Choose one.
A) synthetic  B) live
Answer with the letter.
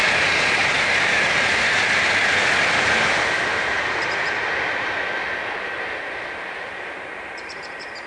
B